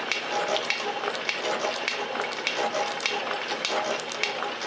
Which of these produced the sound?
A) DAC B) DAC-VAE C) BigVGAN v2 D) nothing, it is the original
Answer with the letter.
D